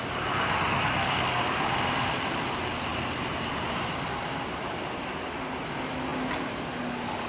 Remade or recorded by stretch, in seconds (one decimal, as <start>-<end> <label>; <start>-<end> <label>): 0.0-2.9 recorded; 2.9-5.4 remade; 5.4-7.3 recorded